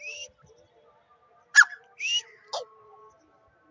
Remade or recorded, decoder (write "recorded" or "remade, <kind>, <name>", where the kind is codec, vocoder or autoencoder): recorded